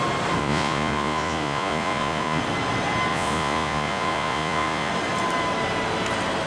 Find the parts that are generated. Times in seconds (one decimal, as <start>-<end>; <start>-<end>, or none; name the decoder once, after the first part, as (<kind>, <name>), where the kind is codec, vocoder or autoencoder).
0.4-2.4 (vocoder, Vocos); 3.1-4.9